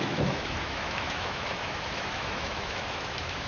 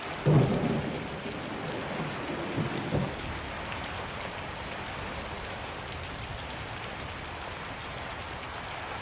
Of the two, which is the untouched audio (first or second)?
second